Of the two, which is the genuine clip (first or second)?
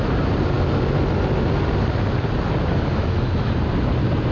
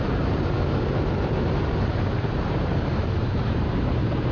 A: first